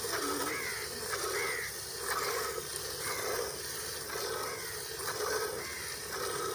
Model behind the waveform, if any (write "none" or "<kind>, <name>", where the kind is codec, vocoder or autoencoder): none